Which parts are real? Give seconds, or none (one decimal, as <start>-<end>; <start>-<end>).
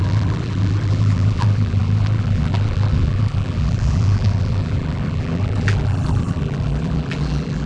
none